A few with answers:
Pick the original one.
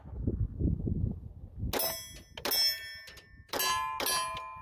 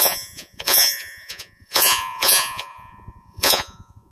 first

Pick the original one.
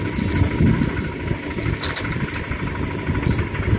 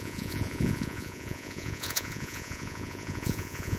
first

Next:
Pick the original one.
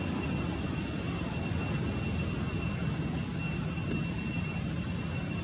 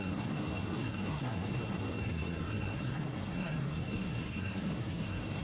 first